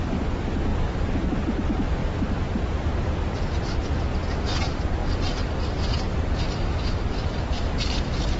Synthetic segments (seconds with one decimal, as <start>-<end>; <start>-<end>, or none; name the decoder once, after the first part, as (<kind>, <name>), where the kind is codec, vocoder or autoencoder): 5.0-7.6 (vocoder, BigVGAN v2)